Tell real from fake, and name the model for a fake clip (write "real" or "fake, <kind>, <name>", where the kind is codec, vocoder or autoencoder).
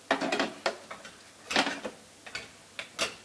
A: real